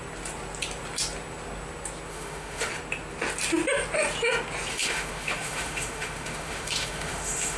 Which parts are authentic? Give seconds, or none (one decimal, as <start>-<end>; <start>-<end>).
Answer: 0.0-2.1; 2.7-4.7

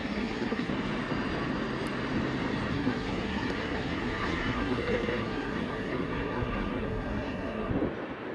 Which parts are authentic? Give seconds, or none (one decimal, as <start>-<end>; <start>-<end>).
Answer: 0.7-2.7; 7.7-8.3

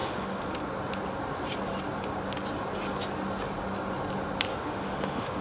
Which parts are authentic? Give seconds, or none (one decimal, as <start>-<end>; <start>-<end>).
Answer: 0.6-4.5

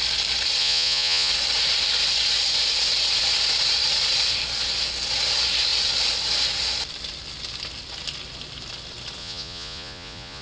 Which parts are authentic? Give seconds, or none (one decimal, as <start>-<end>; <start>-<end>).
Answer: 0.0-0.6; 1.3-9.2

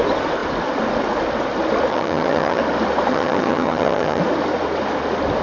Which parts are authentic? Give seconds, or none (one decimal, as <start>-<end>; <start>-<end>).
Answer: 0.0-1.9; 2.6-3.1; 4.2-5.4

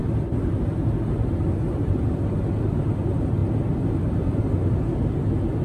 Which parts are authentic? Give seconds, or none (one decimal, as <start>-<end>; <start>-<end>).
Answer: 0.0-5.6

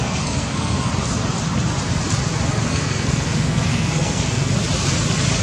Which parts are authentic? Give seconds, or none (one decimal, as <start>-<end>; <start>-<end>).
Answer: 0.9-2.7; 4.5-5.4

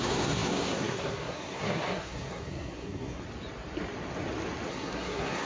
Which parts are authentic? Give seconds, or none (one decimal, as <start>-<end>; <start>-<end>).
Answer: 3.2-4.7